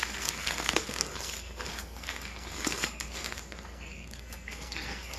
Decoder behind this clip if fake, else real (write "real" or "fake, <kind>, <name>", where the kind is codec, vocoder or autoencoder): fake, codec, SNAC